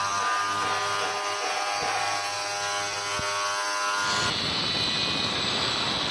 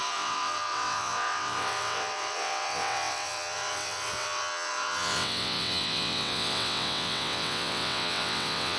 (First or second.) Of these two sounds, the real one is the first